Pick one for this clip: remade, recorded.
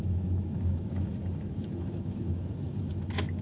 remade